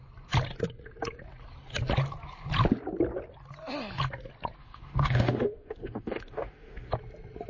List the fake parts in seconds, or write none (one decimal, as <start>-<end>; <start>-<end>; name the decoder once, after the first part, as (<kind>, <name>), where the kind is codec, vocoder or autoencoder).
4.6-6.9 (autoencoder, DAC-VAE)